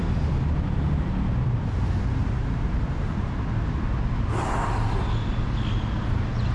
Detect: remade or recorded recorded